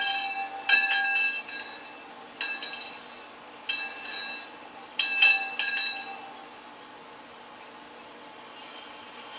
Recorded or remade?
recorded